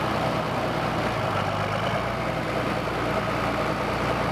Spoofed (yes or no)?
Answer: no